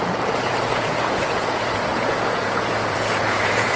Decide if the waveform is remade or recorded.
remade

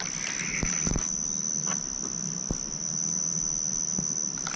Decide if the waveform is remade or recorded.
recorded